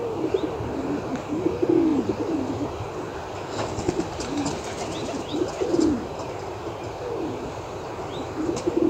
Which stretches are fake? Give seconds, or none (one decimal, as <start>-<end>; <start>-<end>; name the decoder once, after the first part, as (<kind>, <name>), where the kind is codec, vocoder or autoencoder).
1.9-6.5 (vocoder, BigVGAN v2)